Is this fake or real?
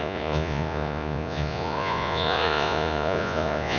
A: fake